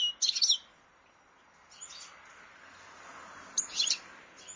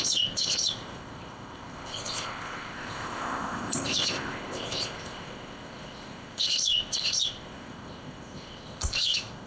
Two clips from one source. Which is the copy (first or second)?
second